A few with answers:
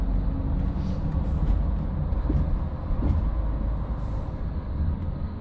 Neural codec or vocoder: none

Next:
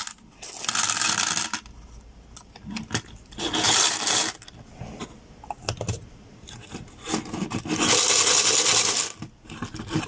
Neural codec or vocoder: none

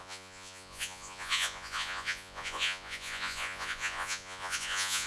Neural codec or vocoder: vocoder, Vocos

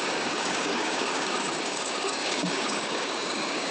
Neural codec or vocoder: codec, DAC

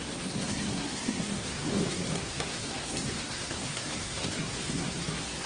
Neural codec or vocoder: codec, SNAC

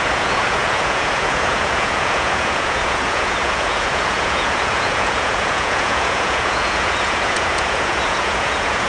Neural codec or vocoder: vocoder, Vocos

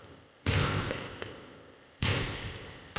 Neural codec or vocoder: codec, ZipCodec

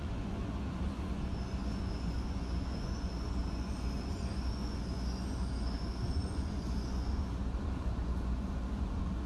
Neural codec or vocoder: vocoder, Vocos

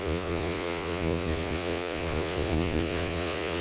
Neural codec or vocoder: vocoder, Vocos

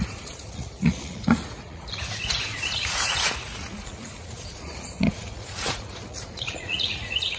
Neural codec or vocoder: vocoder, Vocos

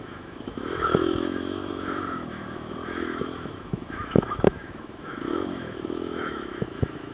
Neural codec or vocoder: autoencoder, DAC-VAE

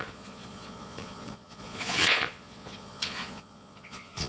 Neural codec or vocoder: vocoder, Vocos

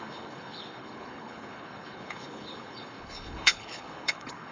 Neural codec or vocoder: codec, HILCodec